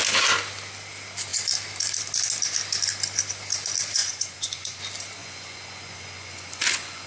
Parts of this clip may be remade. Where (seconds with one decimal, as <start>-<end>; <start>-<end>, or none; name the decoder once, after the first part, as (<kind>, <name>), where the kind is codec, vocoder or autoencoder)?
4.0-4.8 (vocoder, Vocos); 5.2-7.1